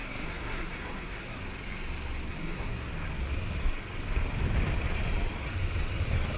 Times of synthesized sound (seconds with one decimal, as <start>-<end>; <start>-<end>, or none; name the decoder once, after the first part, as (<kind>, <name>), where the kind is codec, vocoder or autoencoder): 0.0-1.4 (codec, SNAC); 2.3-2.9